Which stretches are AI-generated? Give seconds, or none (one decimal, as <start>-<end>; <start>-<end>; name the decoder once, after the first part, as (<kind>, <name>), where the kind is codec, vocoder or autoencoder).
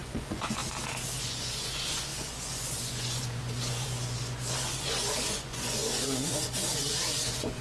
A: 0.0-0.6 (vocoder, Vocos); 1.2-7.6